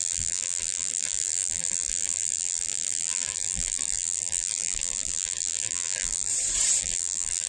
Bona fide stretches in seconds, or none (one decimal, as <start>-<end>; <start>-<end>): 6.3-6.8